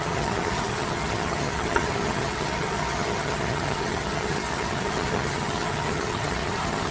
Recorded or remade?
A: remade